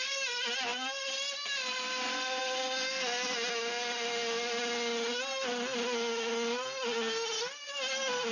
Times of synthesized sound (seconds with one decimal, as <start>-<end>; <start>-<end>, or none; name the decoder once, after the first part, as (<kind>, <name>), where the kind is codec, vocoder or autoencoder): none